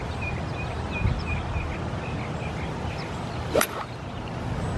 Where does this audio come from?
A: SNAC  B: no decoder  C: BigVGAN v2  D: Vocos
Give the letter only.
B